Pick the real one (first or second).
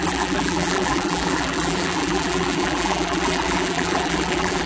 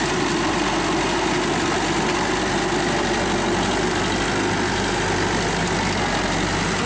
second